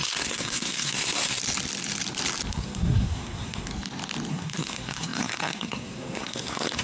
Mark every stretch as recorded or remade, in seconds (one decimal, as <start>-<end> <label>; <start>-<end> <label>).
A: 0.0-1.4 remade; 1.4-2.5 recorded; 2.5-3.7 remade; 3.7-4.3 recorded; 4.3-6.8 remade